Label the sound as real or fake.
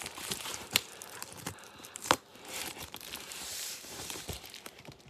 fake